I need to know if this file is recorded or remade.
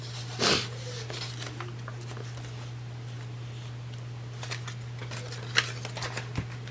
recorded